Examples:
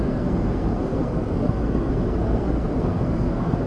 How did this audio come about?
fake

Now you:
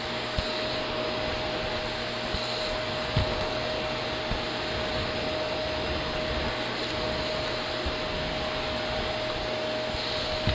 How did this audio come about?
real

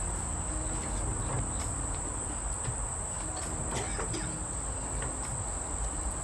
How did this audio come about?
real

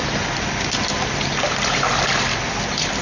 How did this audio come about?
real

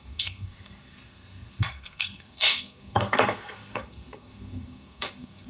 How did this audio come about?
fake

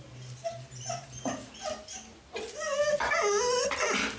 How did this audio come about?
real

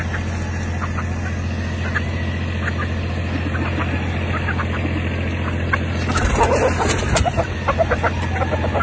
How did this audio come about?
real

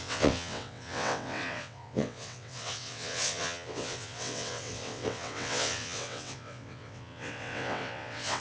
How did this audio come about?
fake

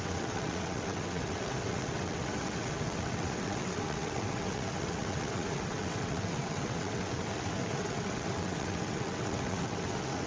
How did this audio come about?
fake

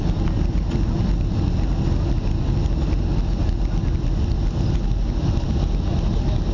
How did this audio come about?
real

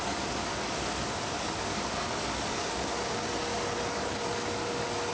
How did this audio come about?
fake